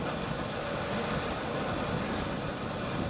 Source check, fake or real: real